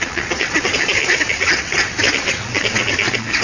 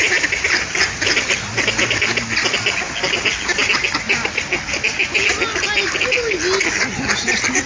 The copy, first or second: first